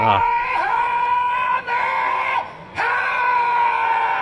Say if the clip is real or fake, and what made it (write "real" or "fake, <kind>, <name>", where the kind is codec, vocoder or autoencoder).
fake, vocoder, Vocos